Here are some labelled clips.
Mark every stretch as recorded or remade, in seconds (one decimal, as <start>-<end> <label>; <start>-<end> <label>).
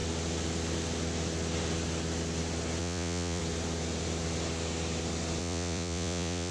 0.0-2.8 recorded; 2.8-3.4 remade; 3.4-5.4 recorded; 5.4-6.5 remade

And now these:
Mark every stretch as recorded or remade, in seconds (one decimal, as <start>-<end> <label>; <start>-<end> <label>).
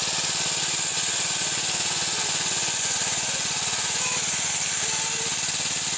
0.0-0.9 recorded; 0.9-4.5 remade; 4.5-6.0 recorded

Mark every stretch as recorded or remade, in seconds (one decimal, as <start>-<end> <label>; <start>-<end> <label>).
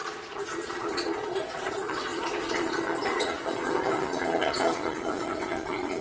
0.0-6.0 remade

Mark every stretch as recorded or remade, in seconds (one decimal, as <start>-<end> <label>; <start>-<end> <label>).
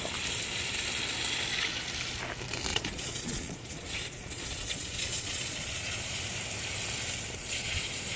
0.0-2.7 recorded; 2.7-6.2 remade; 6.2-7.4 recorded; 7.4-8.2 remade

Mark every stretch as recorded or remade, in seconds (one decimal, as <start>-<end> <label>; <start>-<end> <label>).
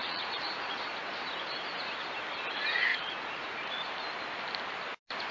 0.0-0.9 remade; 0.9-2.9 recorded; 2.9-3.9 remade; 3.9-5.3 recorded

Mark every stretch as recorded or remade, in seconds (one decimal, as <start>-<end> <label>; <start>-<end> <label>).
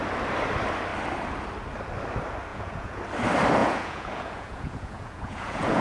0.0-2.5 recorded; 2.5-3.0 remade; 3.0-3.6 recorded; 3.6-5.8 remade